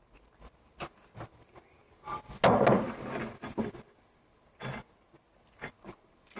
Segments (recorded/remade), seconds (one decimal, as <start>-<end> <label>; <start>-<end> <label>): 0.0-6.4 recorded